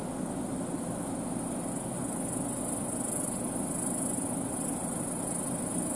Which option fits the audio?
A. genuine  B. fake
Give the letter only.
A